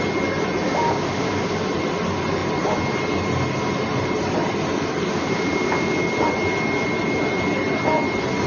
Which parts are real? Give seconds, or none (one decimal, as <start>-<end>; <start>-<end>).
0.0-8.5

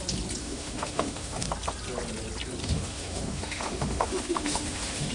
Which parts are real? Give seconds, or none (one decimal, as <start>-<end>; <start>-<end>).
0.0-0.4; 1.5-2.6

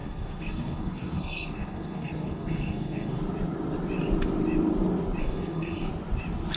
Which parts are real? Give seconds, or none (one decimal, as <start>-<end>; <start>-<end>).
3.2-5.2; 5.9-6.6

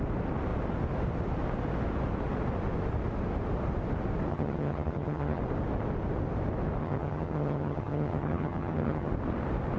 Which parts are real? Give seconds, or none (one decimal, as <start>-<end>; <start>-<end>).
0.0-4.3; 5.4-6.8; 9.1-9.8

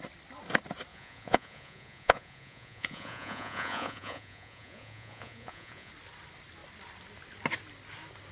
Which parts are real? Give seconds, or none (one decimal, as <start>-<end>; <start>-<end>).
0.0-0.9; 5.9-8.3

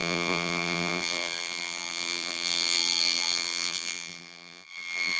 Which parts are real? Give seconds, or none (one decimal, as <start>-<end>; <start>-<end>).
none

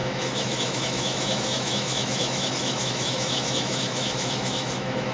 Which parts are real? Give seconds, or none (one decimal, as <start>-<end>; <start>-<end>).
none